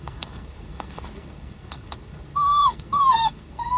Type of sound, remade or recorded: remade